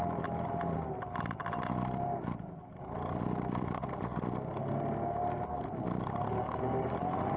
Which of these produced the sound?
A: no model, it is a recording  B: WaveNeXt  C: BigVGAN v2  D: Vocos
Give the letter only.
A